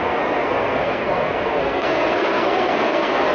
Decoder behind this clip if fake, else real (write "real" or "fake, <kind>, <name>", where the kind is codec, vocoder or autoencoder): fake, codec, SNAC